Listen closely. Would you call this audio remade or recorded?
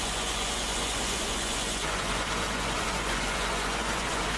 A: remade